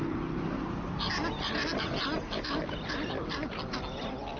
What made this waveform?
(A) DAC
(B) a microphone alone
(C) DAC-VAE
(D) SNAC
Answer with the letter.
B